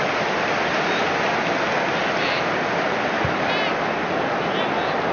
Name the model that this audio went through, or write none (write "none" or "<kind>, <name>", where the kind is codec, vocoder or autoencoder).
none